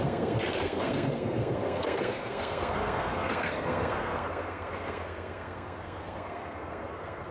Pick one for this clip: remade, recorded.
remade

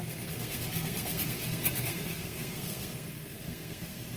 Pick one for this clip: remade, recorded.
remade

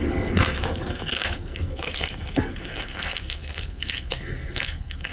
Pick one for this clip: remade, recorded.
remade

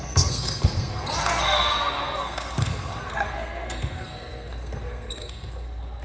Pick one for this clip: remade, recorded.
remade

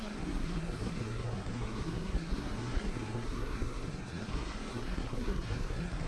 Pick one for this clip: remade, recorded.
remade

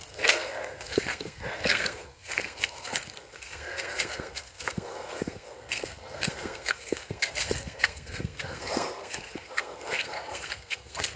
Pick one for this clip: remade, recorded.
remade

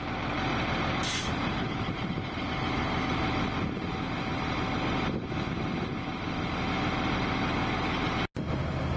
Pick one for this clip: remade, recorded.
recorded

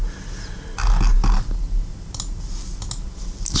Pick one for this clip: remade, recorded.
recorded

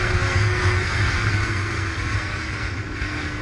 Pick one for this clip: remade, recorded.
remade